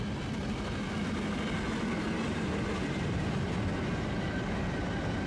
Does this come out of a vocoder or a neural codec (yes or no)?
no